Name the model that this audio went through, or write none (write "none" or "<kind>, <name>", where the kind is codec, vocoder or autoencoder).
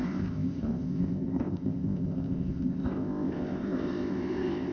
codec, ZipCodec